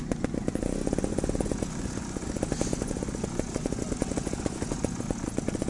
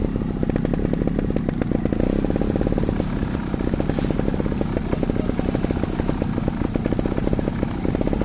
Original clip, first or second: second